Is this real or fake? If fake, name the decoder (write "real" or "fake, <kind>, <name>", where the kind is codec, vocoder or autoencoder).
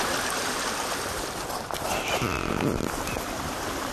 real